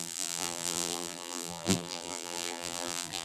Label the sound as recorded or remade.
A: remade